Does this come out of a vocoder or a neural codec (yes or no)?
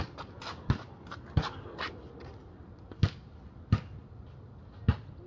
no